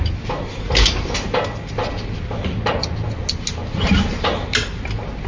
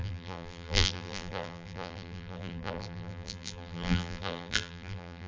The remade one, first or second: second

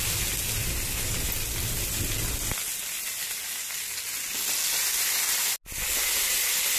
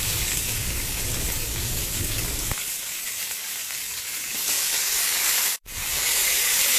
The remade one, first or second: second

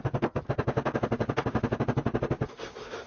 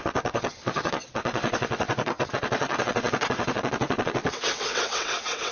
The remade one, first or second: second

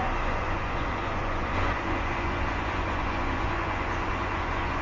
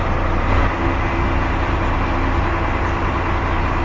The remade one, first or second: first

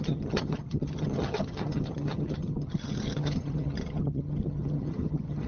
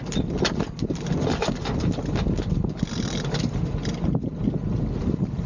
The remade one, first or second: first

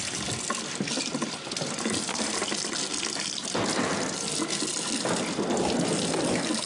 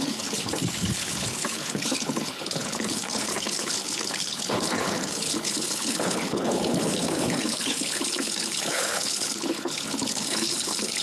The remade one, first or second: second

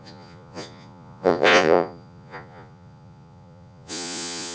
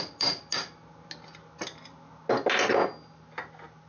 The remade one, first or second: first